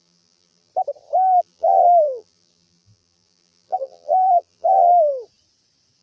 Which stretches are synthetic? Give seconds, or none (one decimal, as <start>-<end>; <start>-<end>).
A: 0.0-0.7; 1.4-5.1

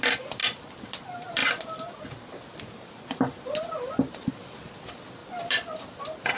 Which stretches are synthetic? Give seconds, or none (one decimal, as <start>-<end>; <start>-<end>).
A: none